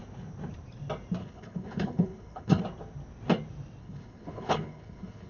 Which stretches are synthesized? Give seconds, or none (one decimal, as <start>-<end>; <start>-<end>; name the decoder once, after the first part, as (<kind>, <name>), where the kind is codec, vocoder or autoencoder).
1.2-2.6 (codec, HILCodec); 3.8-5.3